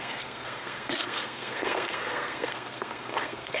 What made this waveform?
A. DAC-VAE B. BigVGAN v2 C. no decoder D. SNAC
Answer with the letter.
D